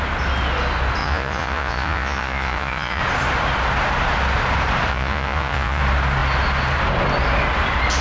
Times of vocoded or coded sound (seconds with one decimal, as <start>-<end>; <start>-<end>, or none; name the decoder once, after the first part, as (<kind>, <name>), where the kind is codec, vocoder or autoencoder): 1.0-3.0 (vocoder, Vocos); 4.9-5.8